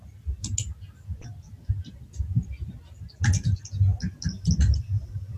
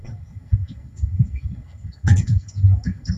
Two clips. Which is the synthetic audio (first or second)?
second